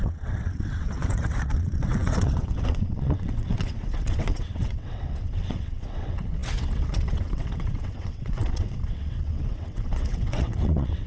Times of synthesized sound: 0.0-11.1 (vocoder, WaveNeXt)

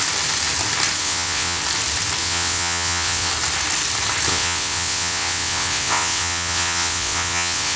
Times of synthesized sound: 1.0-1.6 (vocoder, WaveNeXt); 2.2-3.3; 4.3-7.8

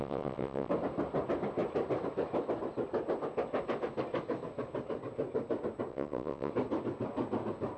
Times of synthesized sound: 0.0-0.7 (vocoder, WaveNeXt); 5.9-6.5

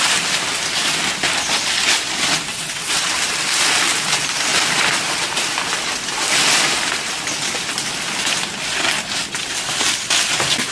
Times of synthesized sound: 2.5-3.1 (vocoder, WaveNeXt)

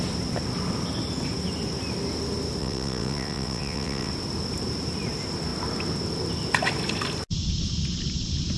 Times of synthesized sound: 2.6-4.1 (vocoder, WaveNeXt)

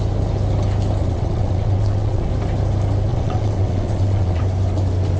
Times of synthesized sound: 1.0-2.3 (vocoder, WaveNeXt); 3.1-4.4

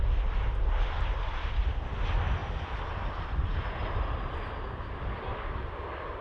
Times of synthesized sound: none

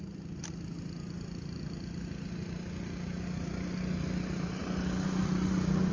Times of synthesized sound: none